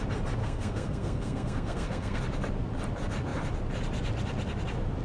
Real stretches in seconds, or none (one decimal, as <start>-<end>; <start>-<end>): 0.0-0.4; 2.2-5.0